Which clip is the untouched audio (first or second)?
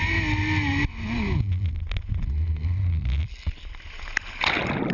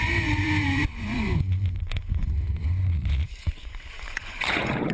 first